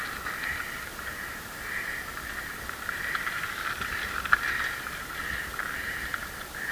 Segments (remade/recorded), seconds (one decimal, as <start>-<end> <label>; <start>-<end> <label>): 0.0-1.1 recorded; 1.1-2.3 remade; 2.3-6.7 recorded